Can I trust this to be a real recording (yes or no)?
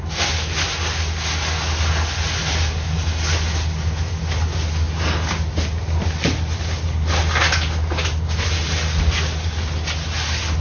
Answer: yes